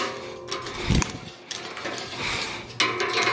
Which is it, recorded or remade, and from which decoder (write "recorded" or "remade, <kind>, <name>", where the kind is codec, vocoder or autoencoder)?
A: recorded